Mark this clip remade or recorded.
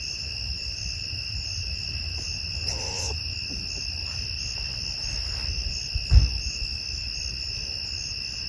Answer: recorded